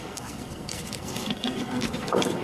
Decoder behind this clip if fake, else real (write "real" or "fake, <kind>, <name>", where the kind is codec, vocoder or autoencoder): fake, codec, SNAC